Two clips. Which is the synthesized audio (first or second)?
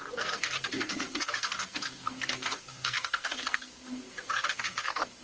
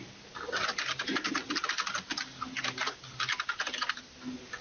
first